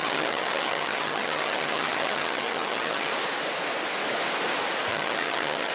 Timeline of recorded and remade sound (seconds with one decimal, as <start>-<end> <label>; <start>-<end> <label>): 0.0-3.1 remade; 3.1-4.9 recorded; 4.9-5.7 remade